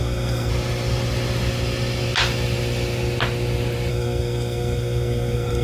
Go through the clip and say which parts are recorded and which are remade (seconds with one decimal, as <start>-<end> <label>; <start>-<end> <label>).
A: 0.0-0.5 remade; 0.5-3.9 recorded; 3.9-5.6 remade

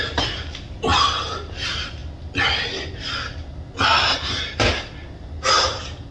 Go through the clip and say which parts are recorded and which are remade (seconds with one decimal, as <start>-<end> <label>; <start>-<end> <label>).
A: 0.0-0.9 remade; 0.9-1.5 recorded; 1.5-2.0 remade; 2.0-6.1 recorded

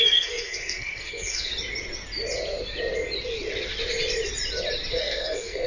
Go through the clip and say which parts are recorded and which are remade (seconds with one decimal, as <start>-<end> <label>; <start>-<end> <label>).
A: 0.0-1.5 remade; 1.5-4.9 recorded; 4.9-5.7 remade

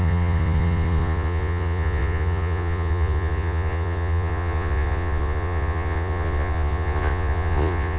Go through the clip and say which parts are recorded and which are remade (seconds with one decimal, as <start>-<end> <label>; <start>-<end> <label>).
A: 0.0-8.0 remade

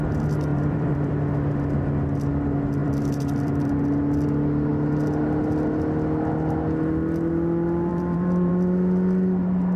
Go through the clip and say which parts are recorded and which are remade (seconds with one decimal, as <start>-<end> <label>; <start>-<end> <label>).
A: 0.0-0.5 recorded; 0.5-1.1 remade; 1.1-2.8 recorded; 2.8-3.8 remade; 3.8-7.9 recorded; 7.9-8.5 remade; 8.5-9.8 recorded